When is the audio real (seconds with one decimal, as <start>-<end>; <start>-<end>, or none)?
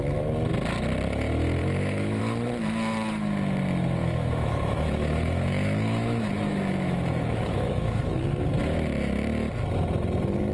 0.0-1.6; 2.2-4.0; 8.2-10.5